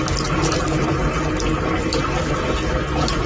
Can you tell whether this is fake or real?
real